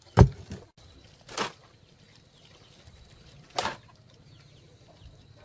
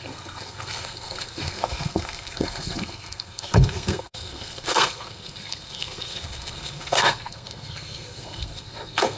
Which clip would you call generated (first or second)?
second